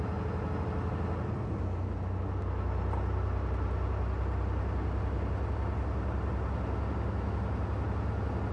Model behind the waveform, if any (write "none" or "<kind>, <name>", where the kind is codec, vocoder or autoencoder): none